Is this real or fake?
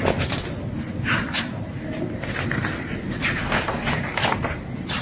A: real